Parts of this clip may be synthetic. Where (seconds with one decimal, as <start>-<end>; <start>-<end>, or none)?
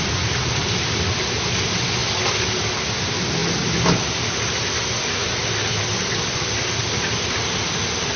none